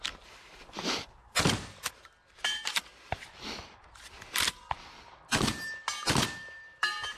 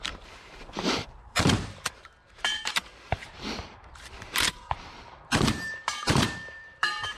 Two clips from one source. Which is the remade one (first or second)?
second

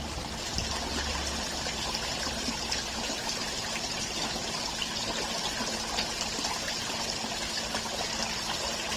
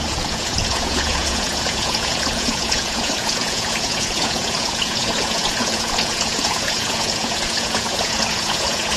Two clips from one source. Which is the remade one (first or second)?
second